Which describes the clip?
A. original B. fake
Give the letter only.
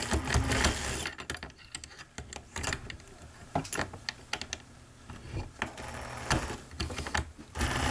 A